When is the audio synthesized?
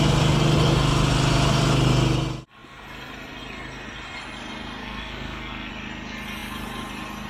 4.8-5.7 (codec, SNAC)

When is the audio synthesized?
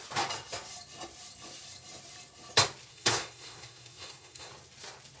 2.9-4.5 (codec, SNAC)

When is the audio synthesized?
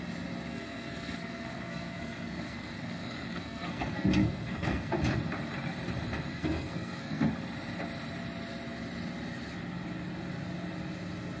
0.5-4.9 (codec, SNAC); 6.3-7.3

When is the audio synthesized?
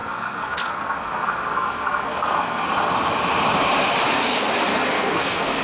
0.0-2.7 (codec, SNAC); 4.7-5.6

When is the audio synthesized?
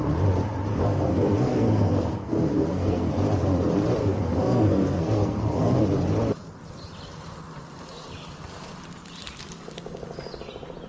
0.7-3.1 (codec, SNAC); 4.0-5.8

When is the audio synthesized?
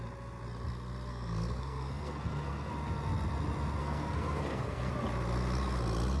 1.1-2.7 (codec, SNAC); 3.8-4.9